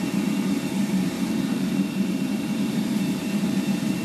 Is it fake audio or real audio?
fake